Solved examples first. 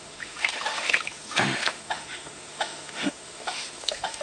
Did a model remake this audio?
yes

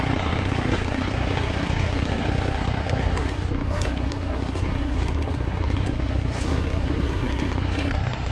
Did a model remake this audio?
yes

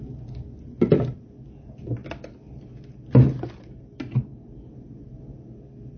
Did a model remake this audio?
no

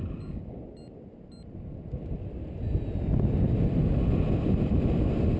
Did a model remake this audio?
no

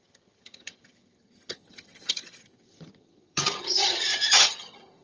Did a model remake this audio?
yes